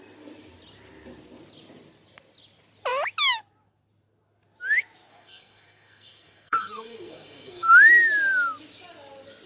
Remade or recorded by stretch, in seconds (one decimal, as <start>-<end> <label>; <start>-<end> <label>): 0.0-5.1 recorded; 5.1-7.7 remade; 7.7-9.5 recorded